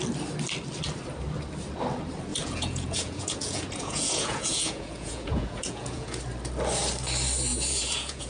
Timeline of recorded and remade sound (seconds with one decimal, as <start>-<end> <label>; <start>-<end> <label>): 0.0-2.3 recorded; 2.3-6.2 remade; 6.2-7.5 recorded; 7.5-8.3 remade

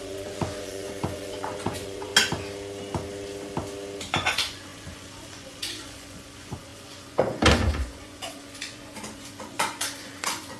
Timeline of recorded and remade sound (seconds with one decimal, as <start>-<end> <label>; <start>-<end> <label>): 0.0-2.1 remade; 2.1-4.0 recorded; 4.0-10.6 remade

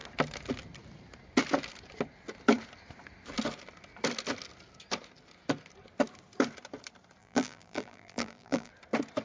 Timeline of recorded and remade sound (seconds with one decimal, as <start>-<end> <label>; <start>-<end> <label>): 0.0-7.2 recorded; 7.2-8.7 remade; 8.7-9.2 recorded

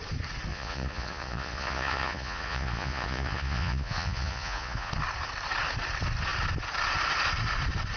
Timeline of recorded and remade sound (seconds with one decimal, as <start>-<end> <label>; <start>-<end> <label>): 0.0-0.5 recorded; 0.5-4.9 remade; 4.9-8.0 recorded